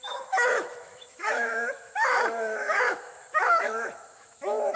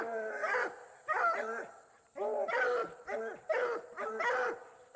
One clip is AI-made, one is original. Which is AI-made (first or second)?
first